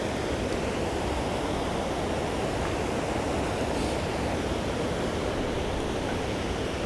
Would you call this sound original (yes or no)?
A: yes